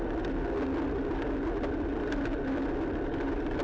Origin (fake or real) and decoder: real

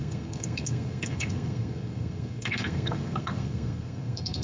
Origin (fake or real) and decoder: fake, codec, SNAC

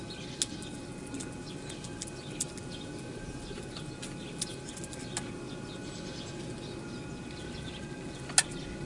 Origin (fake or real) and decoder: real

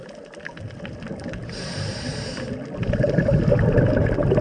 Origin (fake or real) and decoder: real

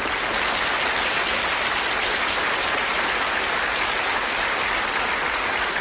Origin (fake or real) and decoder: real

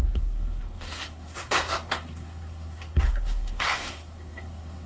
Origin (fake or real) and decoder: fake, codec, SNAC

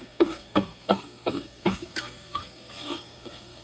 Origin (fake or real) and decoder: fake, codec, SNAC